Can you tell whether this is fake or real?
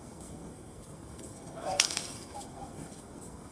fake